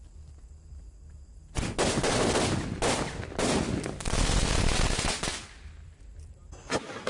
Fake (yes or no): no